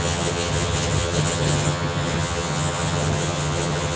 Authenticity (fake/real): fake